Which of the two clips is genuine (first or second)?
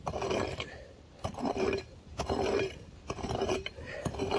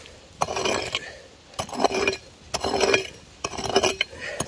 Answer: second